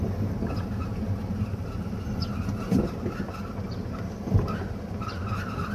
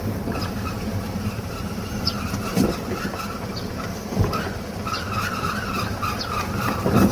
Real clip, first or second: first